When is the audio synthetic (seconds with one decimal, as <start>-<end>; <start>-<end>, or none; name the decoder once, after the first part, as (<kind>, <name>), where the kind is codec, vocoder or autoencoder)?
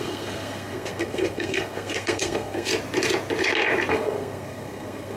0.0-2.7 (codec, SNAC); 3.9-5.2